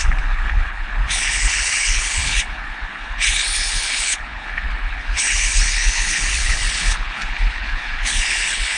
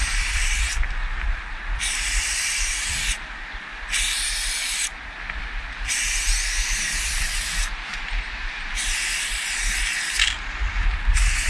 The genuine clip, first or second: second